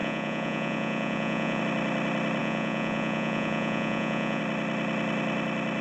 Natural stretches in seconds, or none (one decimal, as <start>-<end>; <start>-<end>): 1.6-2.4; 4.4-5.8